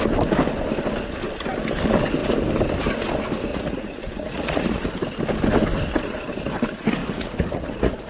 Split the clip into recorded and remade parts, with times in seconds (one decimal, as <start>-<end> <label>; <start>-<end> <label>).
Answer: 0.0-3.5 recorded; 3.5-4.9 remade; 4.9-7.0 recorded; 7.0-8.1 remade